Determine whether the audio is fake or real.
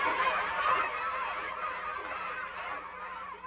fake